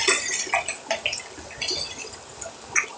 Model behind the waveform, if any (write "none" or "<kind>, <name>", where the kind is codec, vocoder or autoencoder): none